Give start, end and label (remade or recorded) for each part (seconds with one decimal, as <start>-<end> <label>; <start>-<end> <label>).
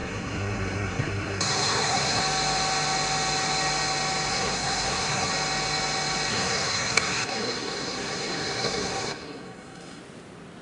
0.0-2.2 remade; 2.2-4.3 recorded; 4.3-5.3 remade; 5.3-6.3 recorded; 6.3-10.0 remade; 10.0-10.6 recorded